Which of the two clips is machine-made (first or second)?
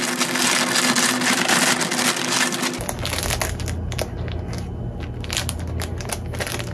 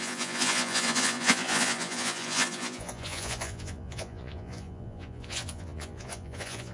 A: second